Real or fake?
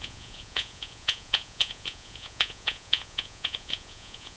fake